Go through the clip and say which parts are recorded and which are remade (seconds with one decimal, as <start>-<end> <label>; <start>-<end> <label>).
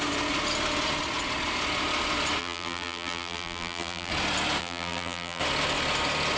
0.0-2.4 recorded; 2.4-4.1 remade; 4.1-4.6 recorded; 4.6-5.4 remade; 5.4-6.4 recorded